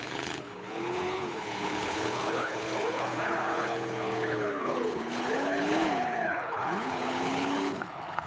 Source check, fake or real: fake